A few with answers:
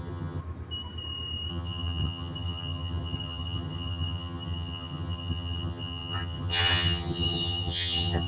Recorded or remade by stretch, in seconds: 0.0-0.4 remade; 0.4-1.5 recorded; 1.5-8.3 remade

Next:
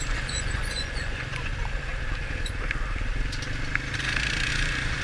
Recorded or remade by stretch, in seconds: 0.0-1.5 remade; 1.5-4.5 recorded; 4.5-5.0 remade

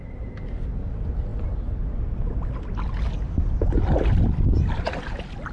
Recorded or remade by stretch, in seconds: 0.0-5.5 recorded